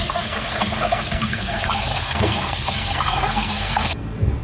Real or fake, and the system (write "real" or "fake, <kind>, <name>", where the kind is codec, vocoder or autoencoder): fake, codec, SNAC